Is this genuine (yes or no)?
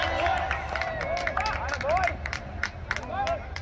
yes